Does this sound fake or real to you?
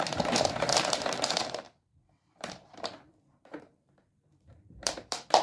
fake